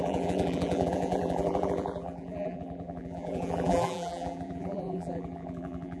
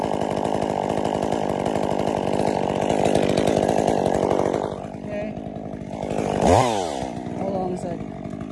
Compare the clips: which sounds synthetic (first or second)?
first